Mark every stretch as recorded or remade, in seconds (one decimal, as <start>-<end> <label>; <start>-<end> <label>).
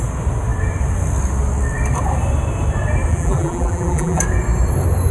0.0-3.1 recorded; 3.1-4.2 remade; 4.2-5.1 recorded